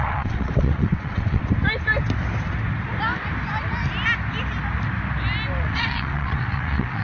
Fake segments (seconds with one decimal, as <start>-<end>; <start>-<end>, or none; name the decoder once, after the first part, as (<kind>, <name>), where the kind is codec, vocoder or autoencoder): 0.0-1.4 (vocoder, WaveNeXt); 5.6-7.0